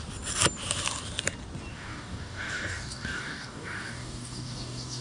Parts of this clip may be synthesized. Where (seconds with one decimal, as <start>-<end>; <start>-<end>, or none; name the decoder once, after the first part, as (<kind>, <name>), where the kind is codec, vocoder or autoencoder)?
1.7-5.0 (codec, DAC)